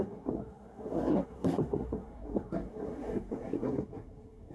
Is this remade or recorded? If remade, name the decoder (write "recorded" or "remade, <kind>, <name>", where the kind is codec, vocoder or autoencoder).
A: remade, codec, SNAC